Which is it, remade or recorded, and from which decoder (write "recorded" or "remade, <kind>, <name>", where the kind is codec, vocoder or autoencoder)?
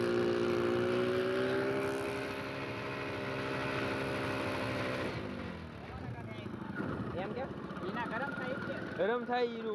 recorded